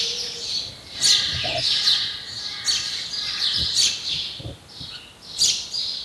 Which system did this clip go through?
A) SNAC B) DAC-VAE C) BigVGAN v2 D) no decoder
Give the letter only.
D